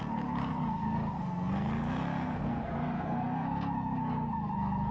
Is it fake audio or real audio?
fake